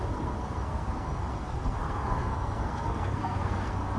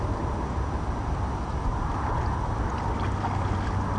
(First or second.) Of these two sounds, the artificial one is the first